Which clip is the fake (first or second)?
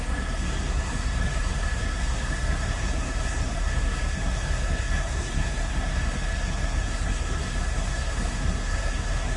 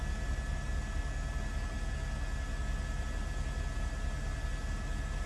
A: first